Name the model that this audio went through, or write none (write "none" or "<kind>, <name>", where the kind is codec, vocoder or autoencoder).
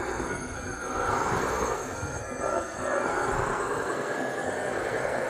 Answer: codec, SNAC